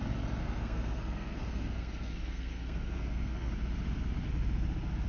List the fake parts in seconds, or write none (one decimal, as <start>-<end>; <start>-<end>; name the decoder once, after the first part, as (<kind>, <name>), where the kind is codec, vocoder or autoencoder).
0.4-3.5 (codec, SNAC)